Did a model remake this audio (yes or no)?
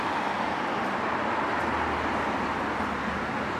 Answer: no